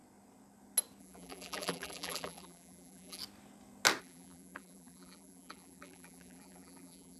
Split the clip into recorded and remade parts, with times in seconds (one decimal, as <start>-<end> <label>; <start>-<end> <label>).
0.0-1.0 recorded; 1.0-3.2 remade; 3.2-4.0 recorded; 4.0-7.2 remade